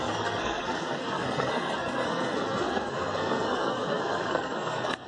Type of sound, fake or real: fake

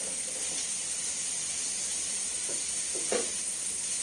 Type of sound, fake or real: real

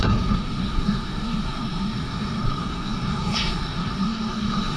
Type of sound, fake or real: fake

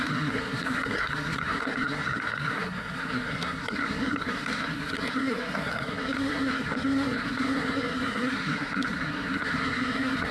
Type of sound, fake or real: fake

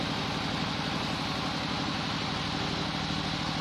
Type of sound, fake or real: real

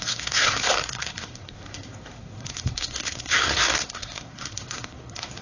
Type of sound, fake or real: fake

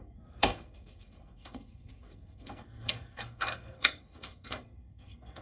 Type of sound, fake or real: fake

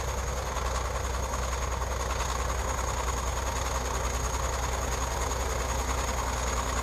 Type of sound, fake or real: real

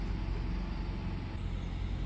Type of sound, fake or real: real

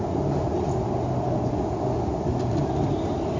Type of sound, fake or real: real